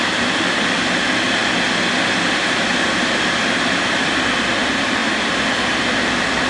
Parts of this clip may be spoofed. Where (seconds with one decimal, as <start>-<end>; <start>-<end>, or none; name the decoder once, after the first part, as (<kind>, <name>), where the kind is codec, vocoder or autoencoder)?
0.0-1.4 (vocoder, BigVGAN v2); 2.0-5.0; 5.8-6.5